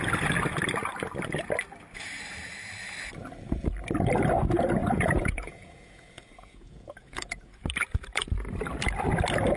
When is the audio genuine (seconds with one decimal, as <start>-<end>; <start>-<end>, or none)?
0.0-4.8; 7.7-9.6